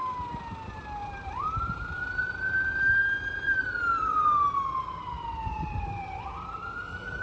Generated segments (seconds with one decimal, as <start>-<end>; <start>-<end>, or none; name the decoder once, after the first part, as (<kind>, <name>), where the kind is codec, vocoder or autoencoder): 1.0-2.3 (vocoder, BigVGAN v2); 5.5-6.6